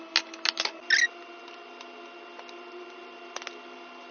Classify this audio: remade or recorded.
recorded